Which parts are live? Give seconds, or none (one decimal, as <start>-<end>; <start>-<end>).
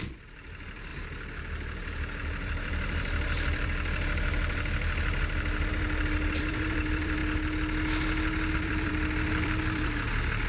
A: 7.2-8.5